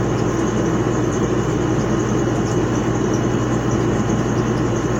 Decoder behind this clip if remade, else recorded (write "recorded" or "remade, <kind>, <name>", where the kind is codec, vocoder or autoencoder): recorded